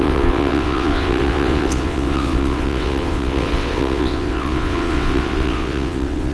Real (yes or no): no